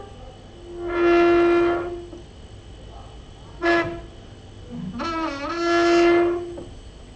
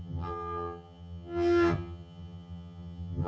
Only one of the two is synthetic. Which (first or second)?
second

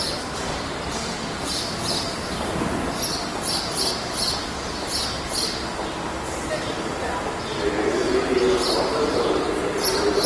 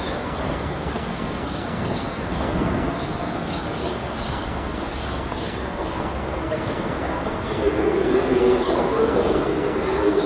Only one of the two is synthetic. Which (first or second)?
second